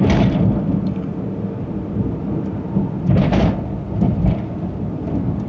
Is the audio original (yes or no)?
no